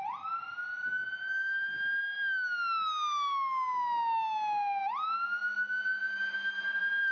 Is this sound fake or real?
real